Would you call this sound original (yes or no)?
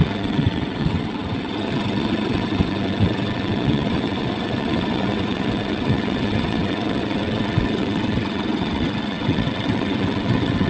no